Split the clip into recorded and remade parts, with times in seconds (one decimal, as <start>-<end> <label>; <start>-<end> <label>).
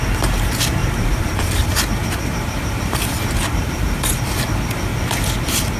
0.0-4.9 remade; 4.9-5.8 recorded